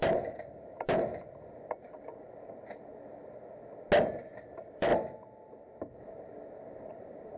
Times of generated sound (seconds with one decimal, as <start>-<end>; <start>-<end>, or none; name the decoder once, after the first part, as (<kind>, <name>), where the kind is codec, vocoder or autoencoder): 0.0-1.1 (vocoder, BigVGAN v2); 4.1-4.9; 5.9-7.4